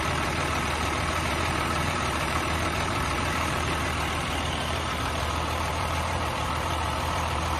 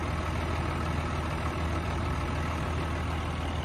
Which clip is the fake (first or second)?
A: first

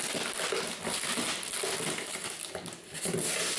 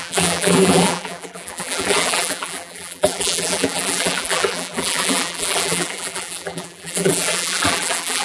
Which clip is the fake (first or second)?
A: second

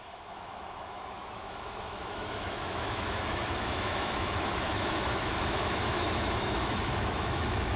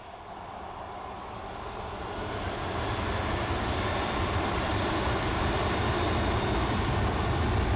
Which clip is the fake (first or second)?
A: first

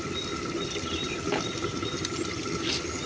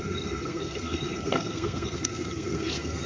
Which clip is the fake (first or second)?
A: second